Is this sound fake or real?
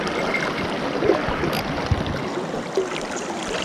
real